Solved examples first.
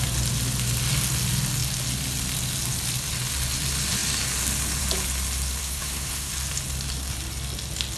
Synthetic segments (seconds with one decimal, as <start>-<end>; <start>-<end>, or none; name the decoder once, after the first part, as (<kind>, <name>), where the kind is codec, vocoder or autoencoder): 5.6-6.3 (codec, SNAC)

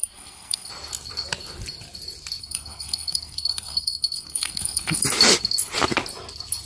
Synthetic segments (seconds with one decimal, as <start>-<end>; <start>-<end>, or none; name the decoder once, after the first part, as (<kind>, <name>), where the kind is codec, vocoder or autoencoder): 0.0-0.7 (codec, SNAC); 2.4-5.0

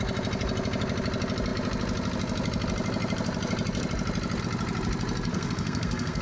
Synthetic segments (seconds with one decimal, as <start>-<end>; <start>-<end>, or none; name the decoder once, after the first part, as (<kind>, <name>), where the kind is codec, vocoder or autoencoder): 5.3-6.2 (codec, SNAC)

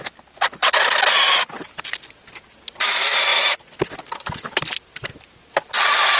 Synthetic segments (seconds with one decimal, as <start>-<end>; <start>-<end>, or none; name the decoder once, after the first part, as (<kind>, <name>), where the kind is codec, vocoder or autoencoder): none

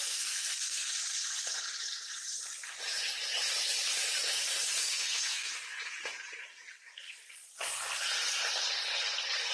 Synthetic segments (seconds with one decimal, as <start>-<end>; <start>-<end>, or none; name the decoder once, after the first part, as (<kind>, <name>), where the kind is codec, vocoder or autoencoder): 0.0-0.9 (codec, SNAC); 4.8-5.5

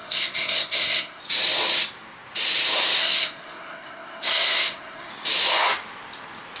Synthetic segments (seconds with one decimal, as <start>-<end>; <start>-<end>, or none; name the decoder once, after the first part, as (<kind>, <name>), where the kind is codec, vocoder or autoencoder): 0.0-1.2 (codec, SNAC); 3.0-5.1